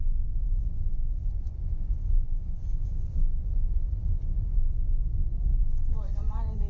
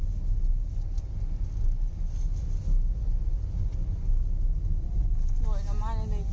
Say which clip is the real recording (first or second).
second